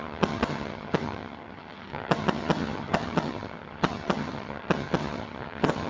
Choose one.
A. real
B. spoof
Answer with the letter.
B